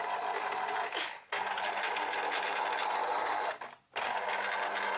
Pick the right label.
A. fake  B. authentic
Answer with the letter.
B